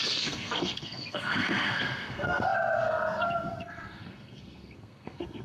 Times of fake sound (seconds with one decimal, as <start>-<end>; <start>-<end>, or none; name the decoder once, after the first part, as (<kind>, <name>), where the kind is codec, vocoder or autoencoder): 0.0-5.4 (codec, SNAC)